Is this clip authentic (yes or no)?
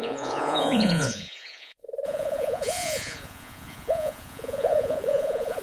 no